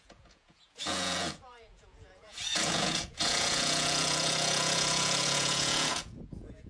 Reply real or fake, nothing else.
fake